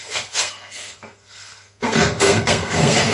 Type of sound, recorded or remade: remade